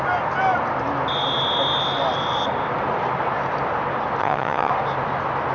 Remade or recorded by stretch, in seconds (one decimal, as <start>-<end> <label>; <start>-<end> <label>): 0.0-4.2 recorded; 4.2-4.7 remade; 4.7-5.5 recorded